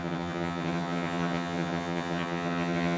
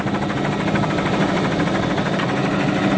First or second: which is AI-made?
first